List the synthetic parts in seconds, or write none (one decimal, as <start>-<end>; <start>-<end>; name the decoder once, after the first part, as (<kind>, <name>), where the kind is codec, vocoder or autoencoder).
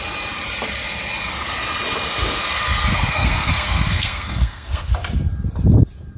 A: 2.9-4.9 (codec, SNAC)